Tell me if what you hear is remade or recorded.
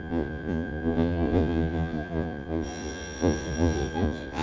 remade